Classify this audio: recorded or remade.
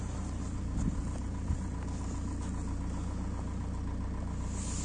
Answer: recorded